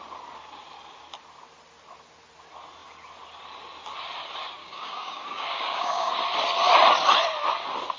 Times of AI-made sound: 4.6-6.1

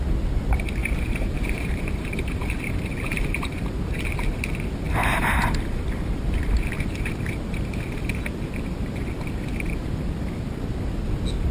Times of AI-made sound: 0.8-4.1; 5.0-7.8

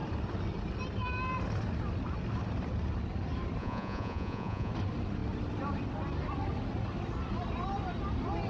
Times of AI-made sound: 3.6-4.7

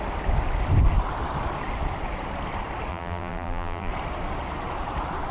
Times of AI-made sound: 2.9-3.9